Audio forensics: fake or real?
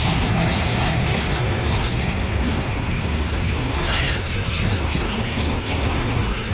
fake